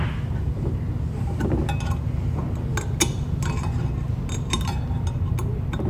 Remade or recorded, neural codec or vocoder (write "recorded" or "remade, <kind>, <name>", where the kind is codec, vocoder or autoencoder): recorded